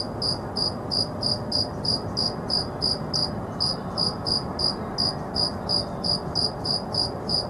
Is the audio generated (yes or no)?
no